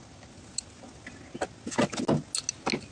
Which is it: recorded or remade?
recorded